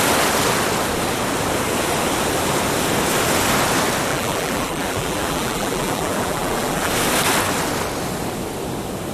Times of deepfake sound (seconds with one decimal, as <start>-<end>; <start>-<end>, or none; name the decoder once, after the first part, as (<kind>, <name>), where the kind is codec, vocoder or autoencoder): 4.1-6.9 (vocoder, BigVGAN v2)